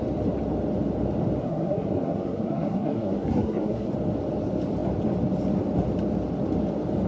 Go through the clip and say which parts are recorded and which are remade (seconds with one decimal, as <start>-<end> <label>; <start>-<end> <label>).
0.0-1.4 recorded; 1.4-3.9 remade; 3.9-7.1 recorded